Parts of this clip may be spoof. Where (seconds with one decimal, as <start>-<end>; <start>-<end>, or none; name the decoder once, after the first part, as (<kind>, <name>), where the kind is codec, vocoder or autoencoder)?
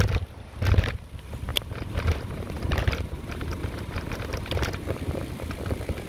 0.0-6.1 (vocoder, BigVGAN v2)